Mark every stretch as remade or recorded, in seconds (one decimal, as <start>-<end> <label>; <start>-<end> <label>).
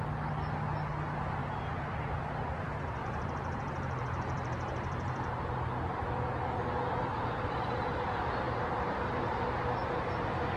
0.0-1.4 recorded; 1.4-2.2 remade; 2.2-3.0 recorded; 3.0-5.3 remade; 5.3-7.1 recorded; 7.1-9.4 remade; 9.4-10.6 recorded